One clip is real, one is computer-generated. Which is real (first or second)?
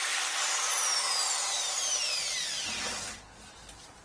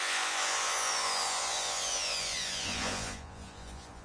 first